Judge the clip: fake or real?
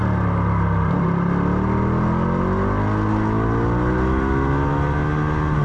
real